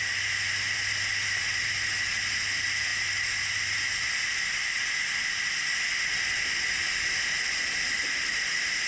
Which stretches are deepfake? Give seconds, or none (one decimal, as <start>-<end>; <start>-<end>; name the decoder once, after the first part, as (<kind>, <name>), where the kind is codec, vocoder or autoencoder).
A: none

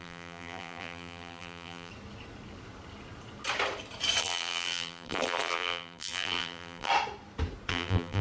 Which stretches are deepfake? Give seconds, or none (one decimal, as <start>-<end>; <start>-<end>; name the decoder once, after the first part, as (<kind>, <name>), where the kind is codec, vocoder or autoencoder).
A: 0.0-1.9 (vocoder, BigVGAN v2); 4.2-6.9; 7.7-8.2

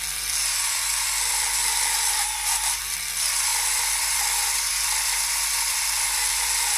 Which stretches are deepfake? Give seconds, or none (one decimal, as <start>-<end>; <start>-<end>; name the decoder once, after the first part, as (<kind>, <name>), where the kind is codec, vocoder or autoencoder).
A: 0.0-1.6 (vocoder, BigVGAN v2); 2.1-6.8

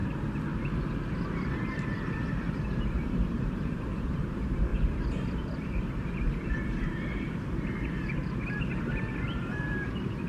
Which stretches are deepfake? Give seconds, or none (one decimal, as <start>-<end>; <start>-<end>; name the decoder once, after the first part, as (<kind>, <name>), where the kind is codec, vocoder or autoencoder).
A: 1.1-10.3 (vocoder, BigVGAN v2)

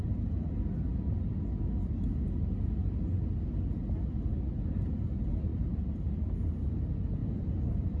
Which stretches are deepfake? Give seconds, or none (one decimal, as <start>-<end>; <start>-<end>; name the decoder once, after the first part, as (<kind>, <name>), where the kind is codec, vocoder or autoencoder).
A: 5.5-6.7 (vocoder, BigVGAN v2); 7.2-8.0

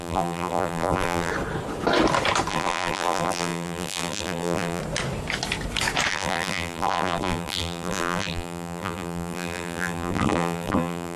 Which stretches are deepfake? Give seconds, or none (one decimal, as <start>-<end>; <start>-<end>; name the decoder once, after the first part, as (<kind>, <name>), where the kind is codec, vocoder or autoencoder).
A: 0.0-1.3 (vocoder, BigVGAN v2); 2.5-4.8; 6.1-11.2